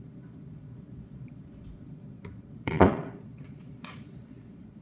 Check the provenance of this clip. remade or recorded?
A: remade